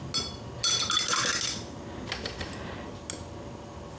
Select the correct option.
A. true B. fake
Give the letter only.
A